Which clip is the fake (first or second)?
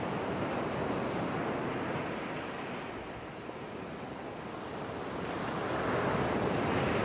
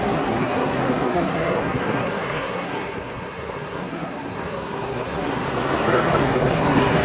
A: second